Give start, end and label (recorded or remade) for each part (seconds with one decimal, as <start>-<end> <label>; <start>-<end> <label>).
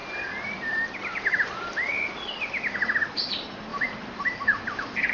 0.0-3.7 recorded; 3.7-5.1 remade